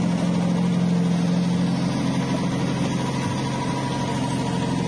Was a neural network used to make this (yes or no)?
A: no